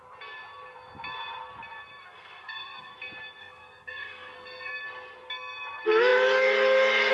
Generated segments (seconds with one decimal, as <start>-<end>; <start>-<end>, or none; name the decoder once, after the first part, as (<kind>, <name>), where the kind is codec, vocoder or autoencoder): 2.0-2.9 (codec, SNAC); 3.4-4.7

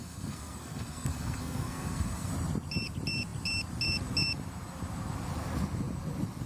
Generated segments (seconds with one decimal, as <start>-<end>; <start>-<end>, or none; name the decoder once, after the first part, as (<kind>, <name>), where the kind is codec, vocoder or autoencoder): 0.0-2.3 (codec, SNAC)

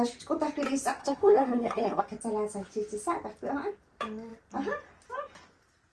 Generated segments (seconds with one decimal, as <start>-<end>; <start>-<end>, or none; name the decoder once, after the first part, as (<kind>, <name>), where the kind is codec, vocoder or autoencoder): 1.0-2.0 (codec, SNAC)